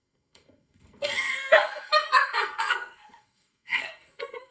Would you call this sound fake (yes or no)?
yes